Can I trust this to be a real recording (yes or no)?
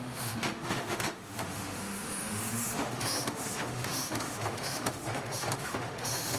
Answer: no